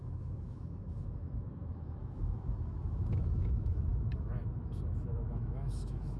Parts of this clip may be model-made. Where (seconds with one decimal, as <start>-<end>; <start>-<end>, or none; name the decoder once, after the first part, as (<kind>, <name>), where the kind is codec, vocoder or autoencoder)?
0.0-6.2 (autoencoder, DAC-VAE)

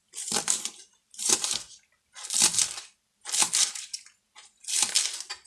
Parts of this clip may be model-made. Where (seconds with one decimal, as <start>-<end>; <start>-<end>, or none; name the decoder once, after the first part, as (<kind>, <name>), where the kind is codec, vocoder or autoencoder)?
0.0-1.8 (vocoder, BigVGAN v2)

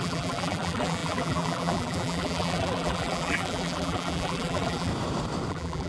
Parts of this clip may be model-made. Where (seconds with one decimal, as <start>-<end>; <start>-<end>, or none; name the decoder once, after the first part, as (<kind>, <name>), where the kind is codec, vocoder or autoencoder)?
0.0-4.9 (vocoder, BigVGAN v2); 5.5-5.9

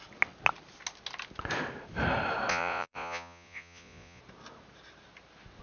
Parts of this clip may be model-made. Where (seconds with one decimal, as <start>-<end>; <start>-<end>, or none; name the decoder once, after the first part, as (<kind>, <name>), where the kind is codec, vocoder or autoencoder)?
2.5-4.2 (vocoder, Vocos)